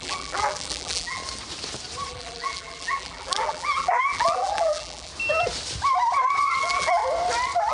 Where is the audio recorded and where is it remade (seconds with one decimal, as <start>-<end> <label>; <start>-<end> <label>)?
0.0-1.2 remade; 1.2-2.1 recorded; 2.1-5.1 remade; 5.1-6.6 recorded; 6.6-7.0 remade; 7.0-7.7 recorded